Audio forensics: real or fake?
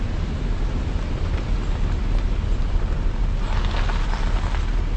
real